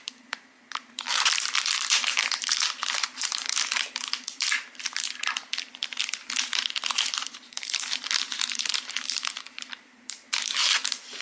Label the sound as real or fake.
fake